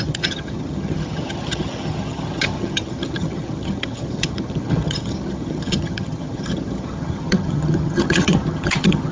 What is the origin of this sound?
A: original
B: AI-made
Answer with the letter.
B